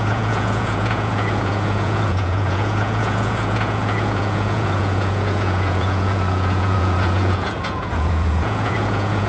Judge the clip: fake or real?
fake